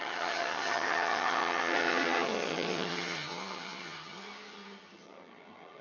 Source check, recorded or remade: remade